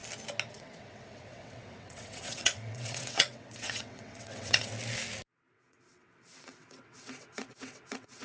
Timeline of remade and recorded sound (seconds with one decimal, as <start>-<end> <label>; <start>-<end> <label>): 0.0-0.5 recorded; 0.5-4.7 remade; 4.7-5.5 recorded; 5.5-8.2 remade